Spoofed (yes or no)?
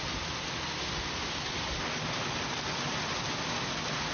no